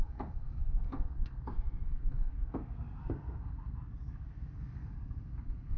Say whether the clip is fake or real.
fake